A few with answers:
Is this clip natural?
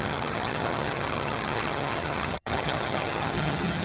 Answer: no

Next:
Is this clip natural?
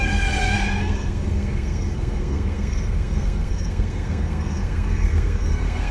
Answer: no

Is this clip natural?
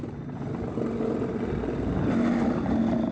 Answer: yes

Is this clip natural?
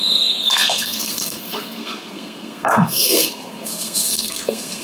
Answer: no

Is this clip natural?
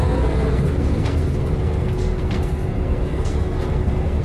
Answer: no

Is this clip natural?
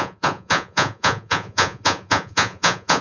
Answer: no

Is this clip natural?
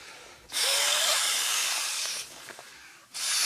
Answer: no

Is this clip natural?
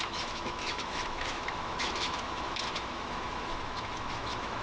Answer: no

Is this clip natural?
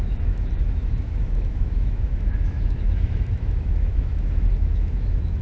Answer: no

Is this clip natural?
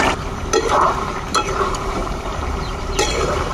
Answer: no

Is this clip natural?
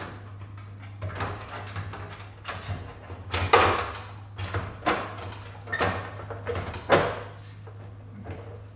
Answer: yes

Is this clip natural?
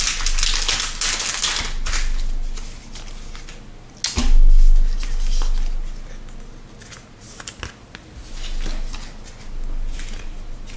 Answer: yes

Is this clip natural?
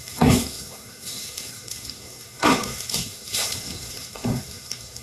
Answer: no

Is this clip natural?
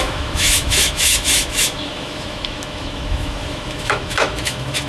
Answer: no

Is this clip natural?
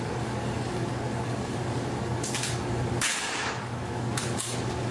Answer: no